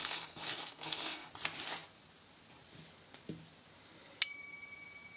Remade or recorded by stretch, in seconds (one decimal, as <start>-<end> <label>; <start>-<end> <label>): 0.0-1.3 remade; 1.3-5.2 recorded